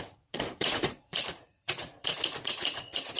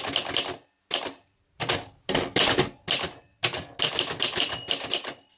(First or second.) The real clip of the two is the second